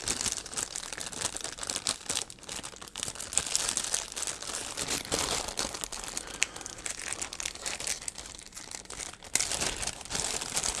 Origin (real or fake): real